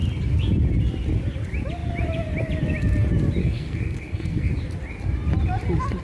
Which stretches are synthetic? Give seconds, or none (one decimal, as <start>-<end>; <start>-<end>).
3.4-4.5